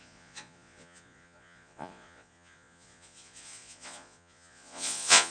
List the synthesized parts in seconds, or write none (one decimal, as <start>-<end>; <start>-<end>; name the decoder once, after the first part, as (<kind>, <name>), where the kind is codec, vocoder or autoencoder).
0.0-5.3 (vocoder, Vocos)